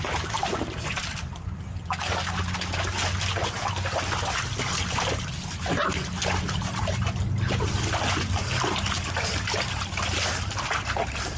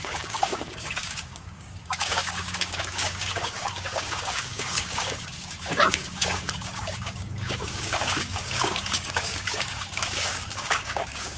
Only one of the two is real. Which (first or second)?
first